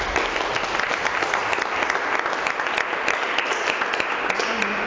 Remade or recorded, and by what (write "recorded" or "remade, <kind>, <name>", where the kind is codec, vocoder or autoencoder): recorded